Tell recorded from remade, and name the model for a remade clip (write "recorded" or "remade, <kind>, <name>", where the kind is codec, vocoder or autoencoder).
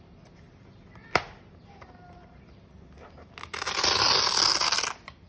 recorded